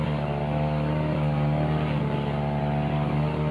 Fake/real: real